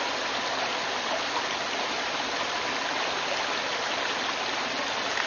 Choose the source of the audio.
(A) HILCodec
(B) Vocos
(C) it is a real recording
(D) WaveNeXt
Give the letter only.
C